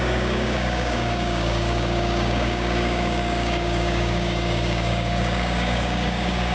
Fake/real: fake